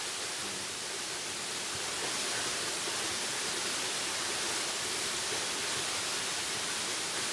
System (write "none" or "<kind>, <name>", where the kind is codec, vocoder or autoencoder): none